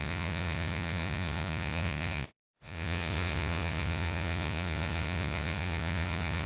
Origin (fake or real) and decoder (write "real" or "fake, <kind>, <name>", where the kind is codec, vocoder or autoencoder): fake, vocoder, Vocos